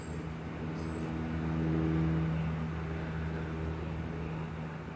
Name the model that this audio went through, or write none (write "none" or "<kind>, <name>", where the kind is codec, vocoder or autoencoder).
none